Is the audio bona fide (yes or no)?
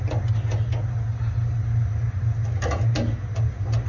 yes